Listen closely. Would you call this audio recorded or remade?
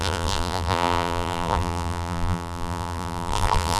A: remade